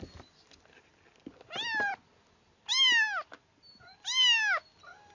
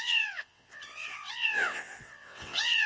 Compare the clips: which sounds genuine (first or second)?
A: first